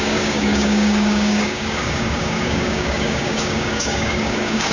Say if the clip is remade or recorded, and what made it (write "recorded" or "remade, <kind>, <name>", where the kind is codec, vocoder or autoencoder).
remade, codec, DAC